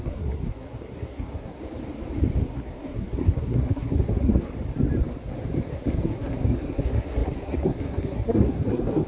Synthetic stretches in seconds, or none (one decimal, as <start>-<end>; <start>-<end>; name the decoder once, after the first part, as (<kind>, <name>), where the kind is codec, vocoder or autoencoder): 0.0-1.6 (codec, SNAC); 2.4-4.5; 5.7-9.1